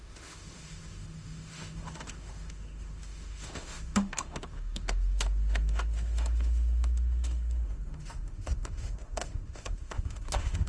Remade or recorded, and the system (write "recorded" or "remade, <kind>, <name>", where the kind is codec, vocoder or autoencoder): remade, autoencoder, DAC-VAE